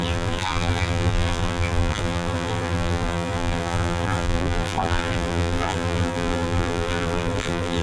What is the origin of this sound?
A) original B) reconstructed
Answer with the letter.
B